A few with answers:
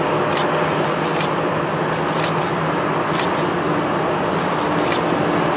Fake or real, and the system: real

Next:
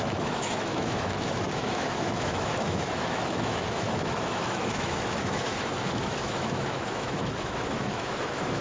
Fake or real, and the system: fake, autoencoder, DAC-VAE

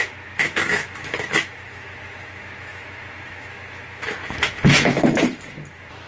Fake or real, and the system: fake, autoencoder, DAC-VAE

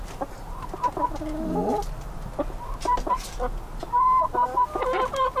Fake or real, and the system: real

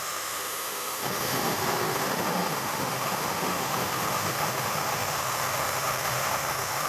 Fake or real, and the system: fake, autoencoder, DAC-VAE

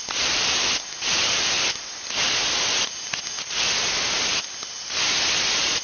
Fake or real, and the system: real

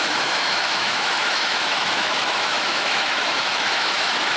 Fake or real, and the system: fake, autoencoder, DAC-VAE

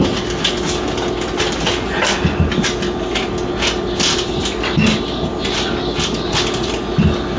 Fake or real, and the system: real